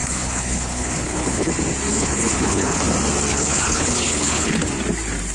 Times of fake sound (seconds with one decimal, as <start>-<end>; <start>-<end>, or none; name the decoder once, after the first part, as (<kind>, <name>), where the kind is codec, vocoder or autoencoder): 0.0-1.5 (codec, HILCodec); 1.9-2.8; 3.3-4.5